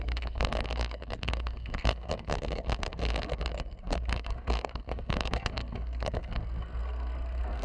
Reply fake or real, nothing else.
fake